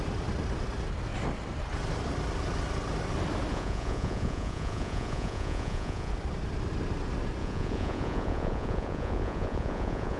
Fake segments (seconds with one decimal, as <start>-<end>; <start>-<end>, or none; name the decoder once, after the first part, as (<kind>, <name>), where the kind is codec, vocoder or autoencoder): 3.5-6.1 (vocoder, Vocos); 7.4-10.2